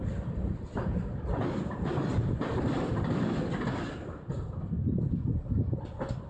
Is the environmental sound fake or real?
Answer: real